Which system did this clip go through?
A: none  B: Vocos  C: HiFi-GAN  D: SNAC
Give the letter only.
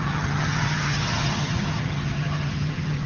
C